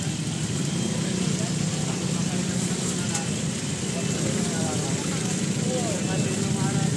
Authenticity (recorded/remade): recorded